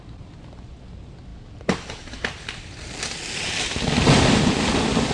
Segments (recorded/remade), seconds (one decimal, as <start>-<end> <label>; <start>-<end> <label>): 0.0-5.1 recorded